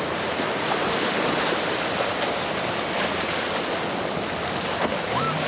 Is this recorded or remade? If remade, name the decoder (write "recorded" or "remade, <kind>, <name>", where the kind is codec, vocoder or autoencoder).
recorded